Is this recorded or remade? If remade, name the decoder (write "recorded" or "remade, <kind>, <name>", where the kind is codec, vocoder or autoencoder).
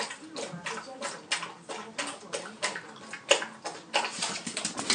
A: recorded